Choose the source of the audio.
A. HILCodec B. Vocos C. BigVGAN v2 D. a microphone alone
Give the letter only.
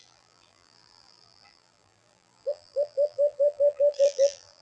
C